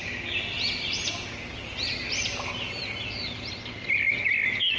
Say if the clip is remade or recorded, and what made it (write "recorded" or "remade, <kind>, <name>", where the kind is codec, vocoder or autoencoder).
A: recorded